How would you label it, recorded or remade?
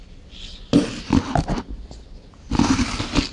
recorded